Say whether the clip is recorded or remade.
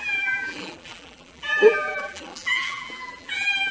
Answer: remade